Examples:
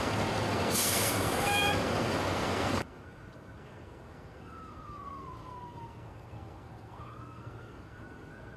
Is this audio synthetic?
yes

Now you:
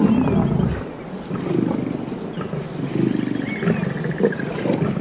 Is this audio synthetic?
no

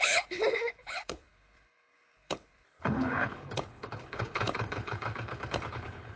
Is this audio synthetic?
yes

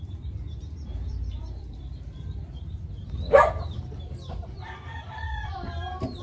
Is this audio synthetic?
yes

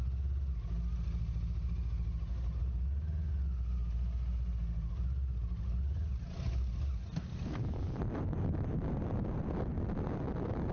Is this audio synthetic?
no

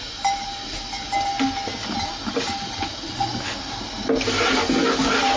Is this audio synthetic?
no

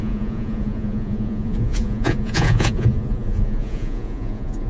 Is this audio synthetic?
yes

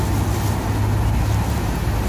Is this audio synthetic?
no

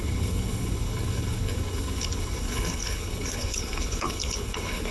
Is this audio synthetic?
yes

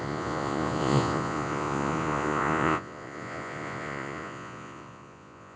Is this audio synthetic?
yes